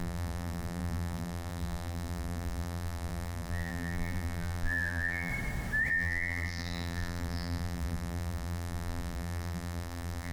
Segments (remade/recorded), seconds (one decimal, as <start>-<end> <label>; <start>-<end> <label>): 0.0-5.3 remade; 5.3-5.9 recorded; 5.9-10.3 remade